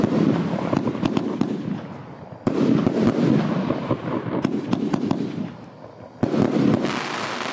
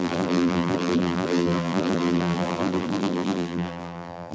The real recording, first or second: first